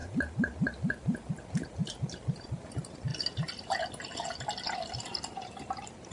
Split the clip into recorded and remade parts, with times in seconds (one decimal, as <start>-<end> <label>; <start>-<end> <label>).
0.0-3.1 remade; 3.1-4.9 recorded; 4.9-6.1 remade